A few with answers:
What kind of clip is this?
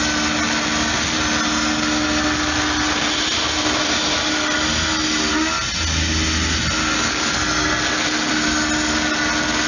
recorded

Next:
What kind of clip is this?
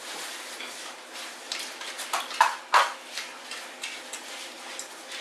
recorded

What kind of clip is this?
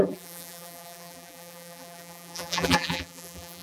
remade